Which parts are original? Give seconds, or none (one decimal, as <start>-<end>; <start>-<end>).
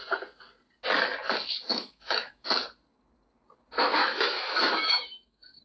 0.0-1.7; 2.5-4.0